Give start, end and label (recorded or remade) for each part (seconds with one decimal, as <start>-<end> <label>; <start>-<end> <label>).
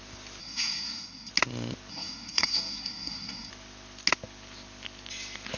0.0-0.4 recorded; 0.4-1.3 remade; 1.3-1.9 recorded; 1.9-3.5 remade; 3.5-5.6 recorded